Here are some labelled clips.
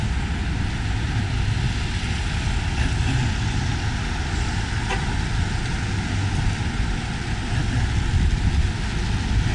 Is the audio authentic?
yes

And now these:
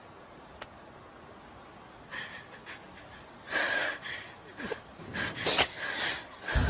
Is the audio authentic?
yes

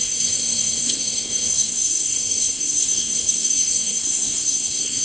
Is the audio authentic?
no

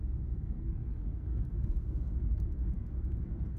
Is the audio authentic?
no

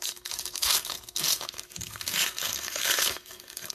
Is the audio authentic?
no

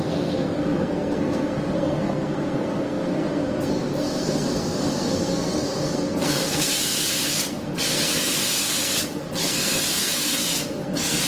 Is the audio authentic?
no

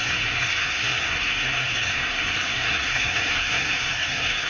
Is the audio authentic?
no